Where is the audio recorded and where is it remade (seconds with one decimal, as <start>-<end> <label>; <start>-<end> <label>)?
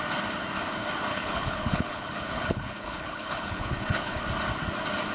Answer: 0.0-1.1 recorded; 1.1-4.2 remade; 4.2-5.1 recorded